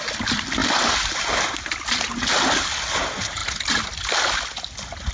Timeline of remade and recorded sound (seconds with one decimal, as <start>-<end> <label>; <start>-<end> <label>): 0.0-5.1 recorded